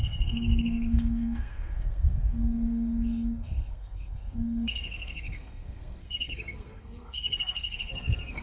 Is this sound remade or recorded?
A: remade